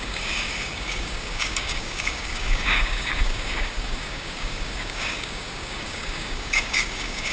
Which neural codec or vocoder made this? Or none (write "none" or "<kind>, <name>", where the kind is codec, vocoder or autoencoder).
codec, DAC